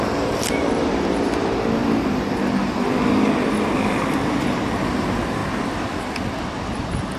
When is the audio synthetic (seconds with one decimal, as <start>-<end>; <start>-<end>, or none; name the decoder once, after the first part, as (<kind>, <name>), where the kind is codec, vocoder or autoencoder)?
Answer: none